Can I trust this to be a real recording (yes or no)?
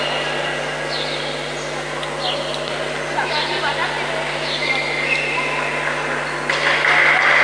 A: yes